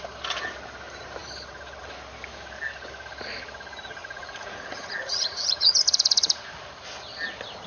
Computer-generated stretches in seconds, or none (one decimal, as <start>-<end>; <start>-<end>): 4.0-6.4